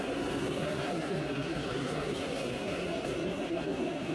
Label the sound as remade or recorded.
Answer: remade